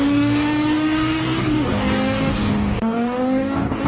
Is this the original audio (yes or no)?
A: no